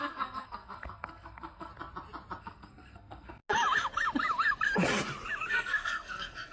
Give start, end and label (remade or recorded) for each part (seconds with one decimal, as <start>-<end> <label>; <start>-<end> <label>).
0.0-1.7 remade; 1.7-2.4 recorded; 2.4-3.4 remade; 3.4-5.5 recorded; 5.5-6.5 remade